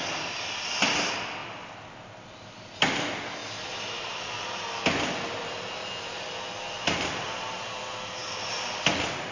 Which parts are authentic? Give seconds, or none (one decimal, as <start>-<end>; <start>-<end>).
0.0-9.3